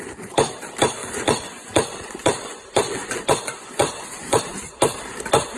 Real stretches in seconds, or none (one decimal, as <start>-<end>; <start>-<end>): 0.0-1.0; 4.4-5.6